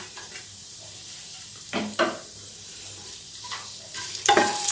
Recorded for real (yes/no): no